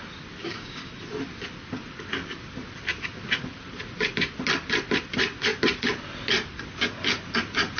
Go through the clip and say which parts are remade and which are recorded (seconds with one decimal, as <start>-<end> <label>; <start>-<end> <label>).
0.0-0.4 recorded; 0.4-0.9 remade; 0.9-7.8 recorded